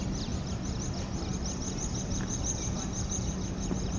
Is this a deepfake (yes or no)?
no